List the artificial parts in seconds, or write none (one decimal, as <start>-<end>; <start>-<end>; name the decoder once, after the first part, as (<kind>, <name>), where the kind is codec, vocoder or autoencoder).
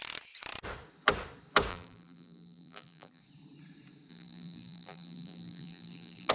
1.7-3.2 (vocoder, BigVGAN v2); 4.1-6.3